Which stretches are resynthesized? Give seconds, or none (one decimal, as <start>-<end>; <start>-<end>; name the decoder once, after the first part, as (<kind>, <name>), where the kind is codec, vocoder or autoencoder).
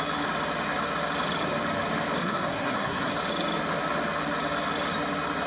2.2-3.1 (codec, SNAC)